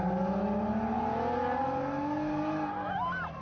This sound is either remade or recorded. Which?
recorded